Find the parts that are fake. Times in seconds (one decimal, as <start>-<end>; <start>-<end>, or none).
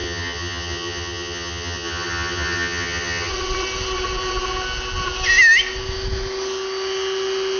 0.0-3.3